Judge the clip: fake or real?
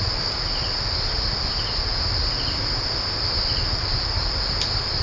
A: real